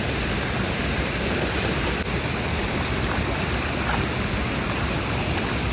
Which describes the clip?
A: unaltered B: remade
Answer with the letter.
A